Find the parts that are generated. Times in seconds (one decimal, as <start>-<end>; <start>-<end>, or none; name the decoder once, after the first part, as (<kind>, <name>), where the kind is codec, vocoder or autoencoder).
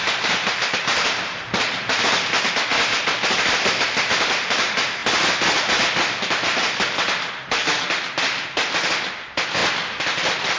none